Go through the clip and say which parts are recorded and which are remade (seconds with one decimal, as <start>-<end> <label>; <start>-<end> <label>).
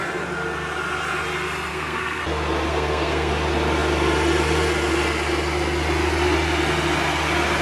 0.0-1.7 recorded; 1.7-2.2 remade; 2.2-2.7 recorded; 2.7-3.3 remade; 3.3-7.6 recorded